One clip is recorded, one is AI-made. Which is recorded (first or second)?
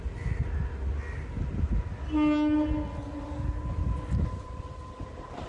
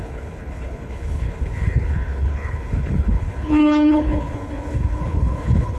first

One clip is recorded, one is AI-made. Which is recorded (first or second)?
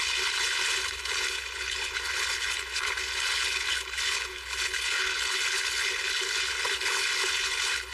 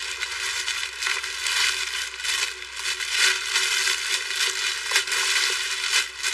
second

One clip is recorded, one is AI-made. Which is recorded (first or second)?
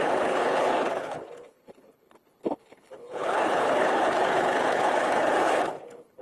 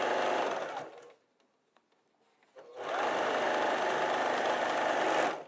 second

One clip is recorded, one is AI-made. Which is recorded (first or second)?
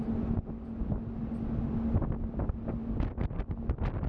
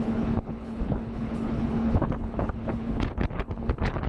first